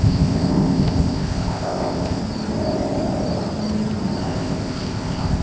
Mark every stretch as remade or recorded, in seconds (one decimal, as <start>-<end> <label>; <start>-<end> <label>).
0.0-2.2 remade; 2.2-4.2 recorded; 4.2-5.4 remade